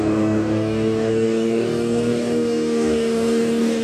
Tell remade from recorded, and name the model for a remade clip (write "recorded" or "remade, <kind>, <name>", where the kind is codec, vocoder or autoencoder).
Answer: remade, codec, DAC